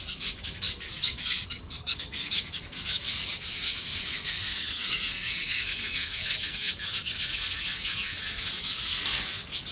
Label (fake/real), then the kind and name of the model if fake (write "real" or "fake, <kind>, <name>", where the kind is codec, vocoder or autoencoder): fake, codec, SNAC